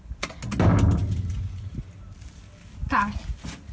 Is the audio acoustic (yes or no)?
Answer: yes